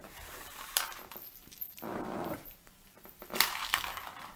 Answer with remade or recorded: remade